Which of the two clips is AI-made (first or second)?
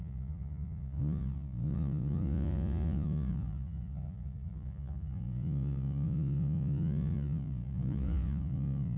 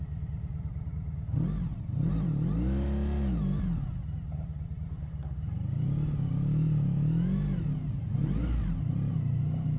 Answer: first